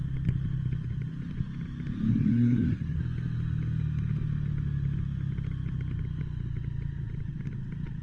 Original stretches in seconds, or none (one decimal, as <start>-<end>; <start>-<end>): 0.0-2.1; 3.0-8.0